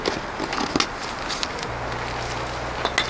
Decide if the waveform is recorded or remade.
recorded